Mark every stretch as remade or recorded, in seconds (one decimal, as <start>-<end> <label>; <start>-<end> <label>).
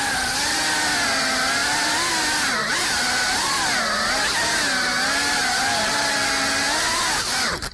0.0-1.6 recorded; 1.6-2.1 remade; 2.1-2.6 recorded; 2.6-4.1 remade; 4.1-4.9 recorded; 4.9-6.3 remade; 6.3-7.7 recorded